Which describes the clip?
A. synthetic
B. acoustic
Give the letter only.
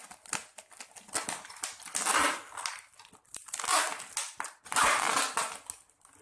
B